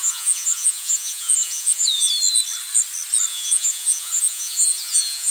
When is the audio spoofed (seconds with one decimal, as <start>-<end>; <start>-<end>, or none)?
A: 0.0-2.1; 3.3-5.3